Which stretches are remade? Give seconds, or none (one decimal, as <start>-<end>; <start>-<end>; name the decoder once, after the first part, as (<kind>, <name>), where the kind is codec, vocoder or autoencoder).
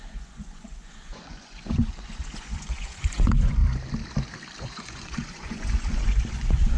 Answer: 0.0-3.6 (vocoder, Vocos); 4.6-6.8